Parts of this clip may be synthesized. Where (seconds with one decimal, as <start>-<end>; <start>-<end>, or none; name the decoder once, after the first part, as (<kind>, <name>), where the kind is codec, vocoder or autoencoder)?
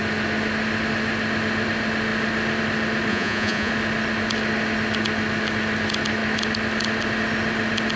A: 3.1-3.7 (vocoder, Vocos)